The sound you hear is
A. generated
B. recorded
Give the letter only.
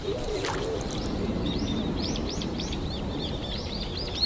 A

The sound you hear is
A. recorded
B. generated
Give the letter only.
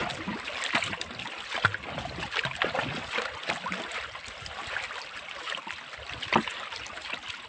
A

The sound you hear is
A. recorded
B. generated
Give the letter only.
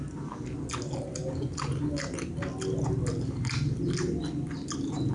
A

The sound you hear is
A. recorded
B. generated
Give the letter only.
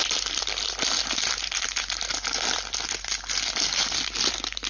B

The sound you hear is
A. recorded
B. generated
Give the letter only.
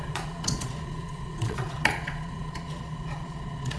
B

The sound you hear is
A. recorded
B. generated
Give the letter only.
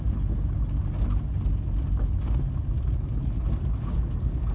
A